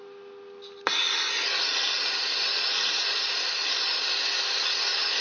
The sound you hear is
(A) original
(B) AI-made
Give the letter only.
A